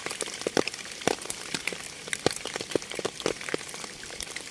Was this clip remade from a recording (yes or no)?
yes